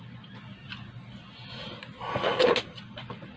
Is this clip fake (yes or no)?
no